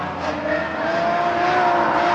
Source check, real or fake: real